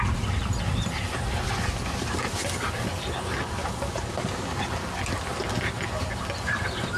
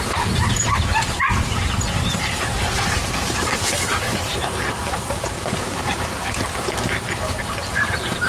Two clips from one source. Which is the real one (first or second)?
first